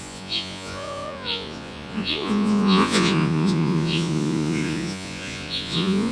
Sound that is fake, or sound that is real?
fake